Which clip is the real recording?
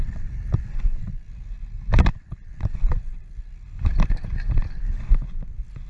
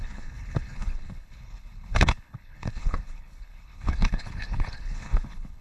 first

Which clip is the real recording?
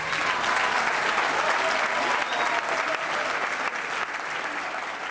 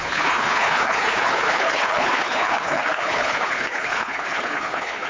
first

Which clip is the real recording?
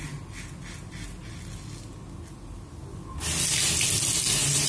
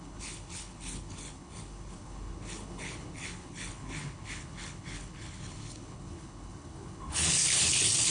first